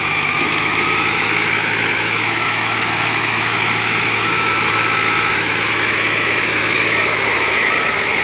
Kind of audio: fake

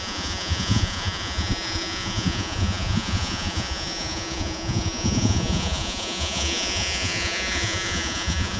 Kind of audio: fake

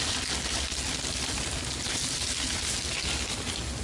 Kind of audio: real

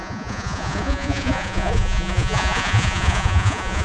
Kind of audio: fake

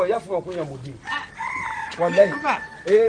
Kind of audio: real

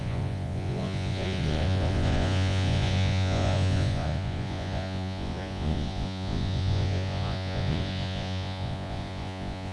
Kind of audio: fake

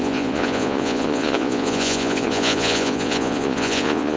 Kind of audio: fake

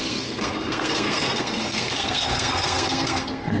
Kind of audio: fake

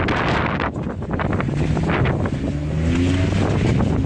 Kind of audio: real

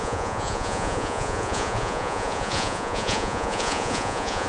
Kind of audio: fake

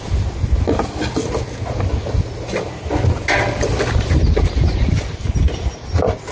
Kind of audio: real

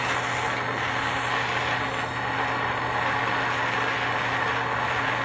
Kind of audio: real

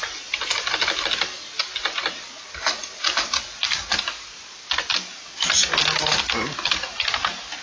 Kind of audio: real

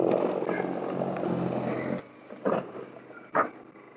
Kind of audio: real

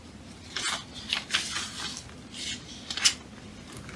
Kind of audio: real